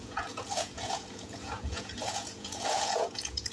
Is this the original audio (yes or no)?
no